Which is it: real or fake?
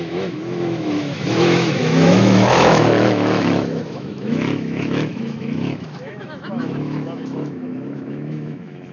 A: fake